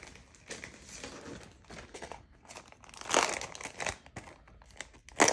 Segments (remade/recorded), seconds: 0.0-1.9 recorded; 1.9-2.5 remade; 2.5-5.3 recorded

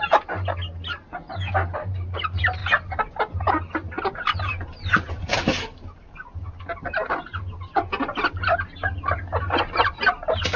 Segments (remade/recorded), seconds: 0.0-4.5 recorded; 4.5-6.6 remade; 6.6-10.6 recorded

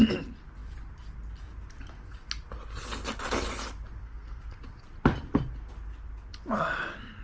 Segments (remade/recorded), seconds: 0.0-4.0 recorded; 4.0-4.6 remade; 4.6-7.2 recorded

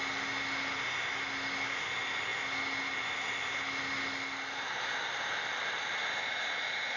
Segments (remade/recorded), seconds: 0.0-7.0 recorded

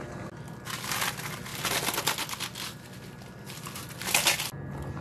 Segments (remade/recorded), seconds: 0.0-5.0 recorded

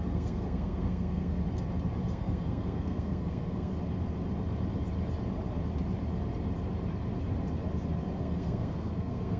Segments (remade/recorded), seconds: 0.0-1.4 remade; 1.4-2.1 recorded; 2.1-3.7 remade; 3.7-8.2 recorded; 8.2-9.4 remade

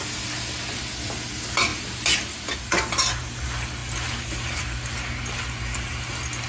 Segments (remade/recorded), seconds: 0.0-6.5 recorded